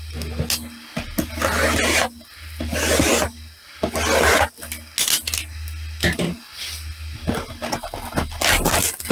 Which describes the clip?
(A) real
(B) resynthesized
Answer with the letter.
A